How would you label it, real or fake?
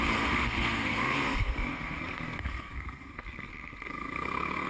fake